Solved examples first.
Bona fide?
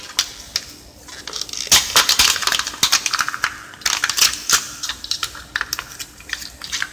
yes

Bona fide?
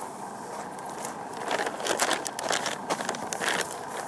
yes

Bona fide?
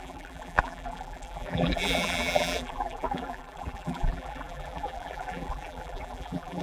no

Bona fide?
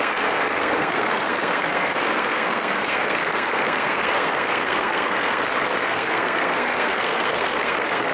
no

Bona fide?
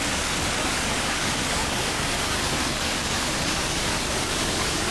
no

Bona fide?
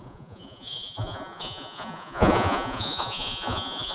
no